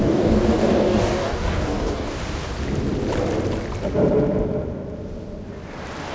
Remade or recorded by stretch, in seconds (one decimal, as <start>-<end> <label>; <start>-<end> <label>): 0.0-2.2 remade; 2.2-6.1 recorded